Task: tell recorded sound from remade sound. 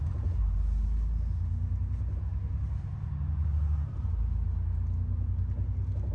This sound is recorded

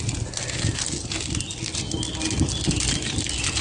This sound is recorded